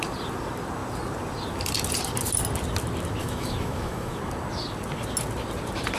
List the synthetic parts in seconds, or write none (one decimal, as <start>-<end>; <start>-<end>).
3.2-4.2